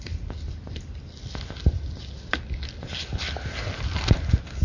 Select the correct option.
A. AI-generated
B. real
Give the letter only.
B